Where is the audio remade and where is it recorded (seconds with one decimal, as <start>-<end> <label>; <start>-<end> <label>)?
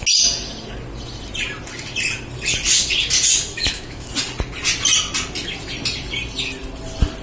0.0-3.5 recorded; 3.5-4.1 remade; 4.1-7.2 recorded